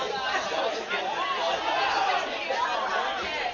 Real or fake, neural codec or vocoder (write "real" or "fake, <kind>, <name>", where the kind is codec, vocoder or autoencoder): real